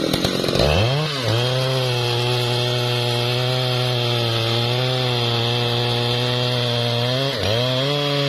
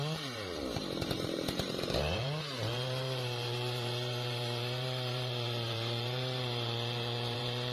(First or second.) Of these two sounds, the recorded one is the first